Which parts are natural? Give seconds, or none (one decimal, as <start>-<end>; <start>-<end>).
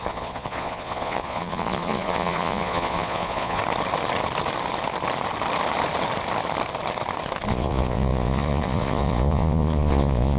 3.6-7.5